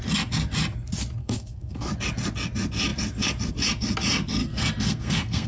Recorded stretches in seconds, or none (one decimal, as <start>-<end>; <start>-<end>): 0.0-1.2; 1.9-4.4